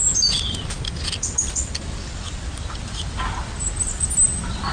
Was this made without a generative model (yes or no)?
yes